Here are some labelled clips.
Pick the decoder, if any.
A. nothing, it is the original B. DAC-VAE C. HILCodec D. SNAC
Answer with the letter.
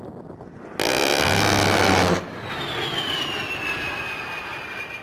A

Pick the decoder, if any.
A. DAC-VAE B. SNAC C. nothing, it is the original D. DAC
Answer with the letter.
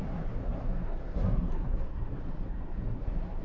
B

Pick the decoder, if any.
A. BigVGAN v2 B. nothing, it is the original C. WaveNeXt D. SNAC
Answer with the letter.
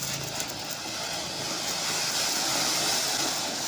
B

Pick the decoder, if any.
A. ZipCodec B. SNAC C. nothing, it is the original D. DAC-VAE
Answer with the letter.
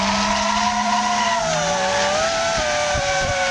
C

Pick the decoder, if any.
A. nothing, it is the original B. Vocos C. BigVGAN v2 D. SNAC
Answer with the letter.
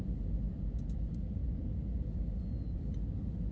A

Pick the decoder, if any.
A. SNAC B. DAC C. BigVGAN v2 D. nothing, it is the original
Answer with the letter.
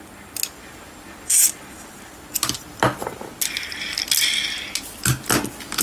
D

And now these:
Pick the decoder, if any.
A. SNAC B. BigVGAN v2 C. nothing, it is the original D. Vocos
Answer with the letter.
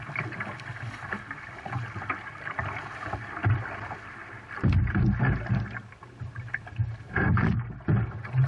C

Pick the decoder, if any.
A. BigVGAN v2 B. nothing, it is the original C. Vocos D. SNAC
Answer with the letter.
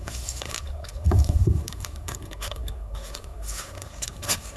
D